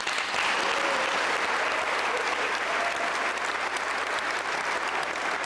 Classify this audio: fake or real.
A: real